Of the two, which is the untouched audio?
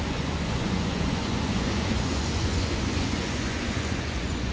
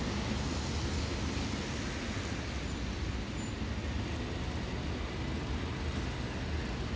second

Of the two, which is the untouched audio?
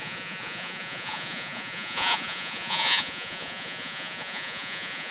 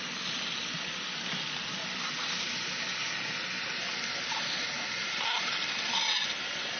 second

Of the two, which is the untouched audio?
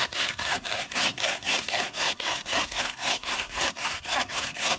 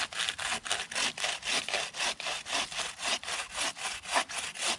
second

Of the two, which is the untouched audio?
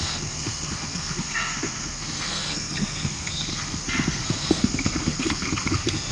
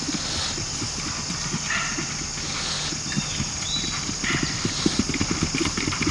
second